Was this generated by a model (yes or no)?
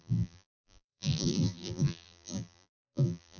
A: yes